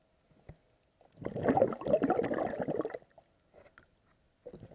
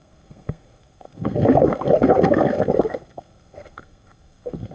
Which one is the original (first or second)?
first